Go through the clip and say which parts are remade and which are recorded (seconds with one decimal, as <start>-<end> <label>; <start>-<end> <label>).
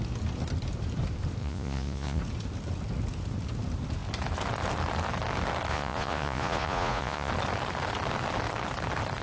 0.0-1.4 recorded; 1.4-2.2 remade; 2.2-5.7 recorded; 5.7-7.3 remade; 7.3-9.2 recorded